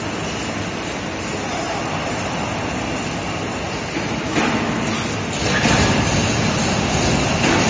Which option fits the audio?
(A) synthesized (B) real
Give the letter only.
B